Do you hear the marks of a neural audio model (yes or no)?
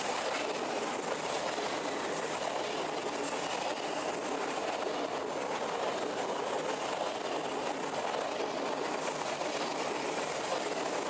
no